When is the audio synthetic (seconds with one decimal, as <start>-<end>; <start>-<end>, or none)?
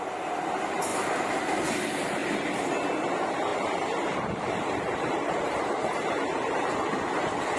3.5-6.7